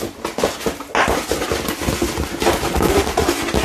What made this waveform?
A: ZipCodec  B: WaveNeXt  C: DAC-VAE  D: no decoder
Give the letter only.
D